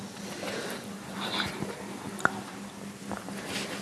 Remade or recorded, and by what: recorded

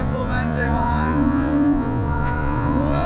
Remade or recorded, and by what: remade, vocoder, Vocos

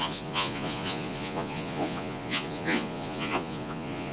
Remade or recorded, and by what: remade, vocoder, Vocos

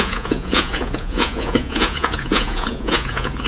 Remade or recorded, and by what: remade, vocoder, Vocos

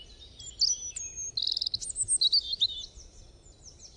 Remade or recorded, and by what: recorded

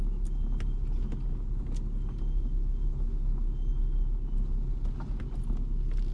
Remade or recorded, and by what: recorded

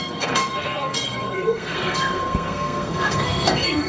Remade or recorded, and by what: remade, codec, SNAC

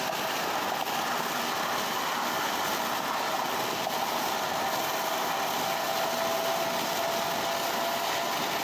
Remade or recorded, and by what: recorded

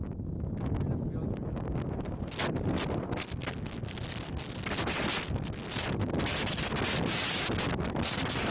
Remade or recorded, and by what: recorded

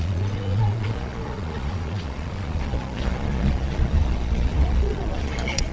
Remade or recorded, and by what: remade, vocoder, Vocos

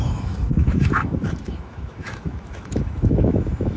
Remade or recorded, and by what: remade, autoencoder, DAC-VAE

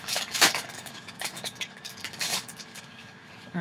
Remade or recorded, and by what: remade, codec, DAC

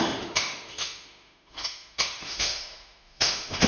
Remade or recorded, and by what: remade, autoencoder, DAC-VAE